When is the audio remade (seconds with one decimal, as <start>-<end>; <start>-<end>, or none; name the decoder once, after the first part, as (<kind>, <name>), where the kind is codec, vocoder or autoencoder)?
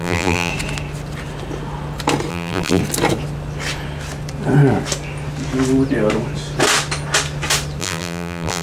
0.0-0.5 (vocoder, BigVGAN v2); 2.3-2.8; 7.8-8.6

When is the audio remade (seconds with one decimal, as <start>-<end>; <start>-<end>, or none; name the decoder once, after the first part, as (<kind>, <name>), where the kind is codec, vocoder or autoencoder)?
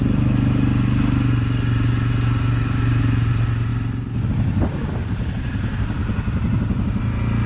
none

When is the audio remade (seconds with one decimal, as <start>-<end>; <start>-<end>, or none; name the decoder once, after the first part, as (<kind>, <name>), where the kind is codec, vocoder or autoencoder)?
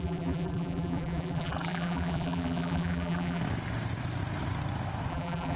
0.0-3.4 (vocoder, BigVGAN v2); 5.1-5.6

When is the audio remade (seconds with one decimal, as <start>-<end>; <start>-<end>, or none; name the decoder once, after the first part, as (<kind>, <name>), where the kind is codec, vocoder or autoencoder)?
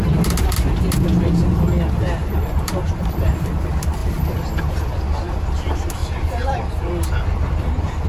2.2-3.5 (vocoder, BigVGAN v2); 6.0-6.9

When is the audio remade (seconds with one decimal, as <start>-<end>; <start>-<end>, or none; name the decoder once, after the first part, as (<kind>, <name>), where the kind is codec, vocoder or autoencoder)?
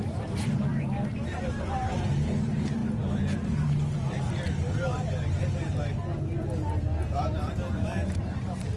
0.0-6.0 (vocoder, BigVGAN v2); 7.2-8.8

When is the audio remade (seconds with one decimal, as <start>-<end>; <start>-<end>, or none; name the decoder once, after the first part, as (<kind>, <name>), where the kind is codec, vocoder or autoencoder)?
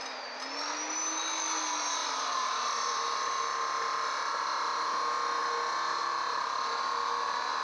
2.0-3.4 (vocoder, BigVGAN v2)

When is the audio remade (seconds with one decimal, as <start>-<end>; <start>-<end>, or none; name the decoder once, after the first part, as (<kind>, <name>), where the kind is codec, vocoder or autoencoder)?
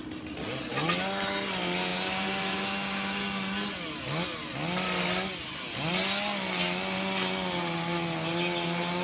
1.9-3.2 (vocoder, BigVGAN v2)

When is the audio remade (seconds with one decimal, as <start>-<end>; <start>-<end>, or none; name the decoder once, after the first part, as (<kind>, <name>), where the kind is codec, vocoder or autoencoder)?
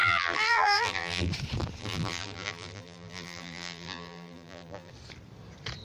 0.0-1.3 (vocoder, BigVGAN v2); 1.8-4.9